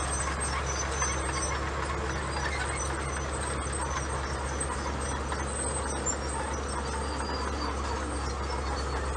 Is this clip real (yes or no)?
yes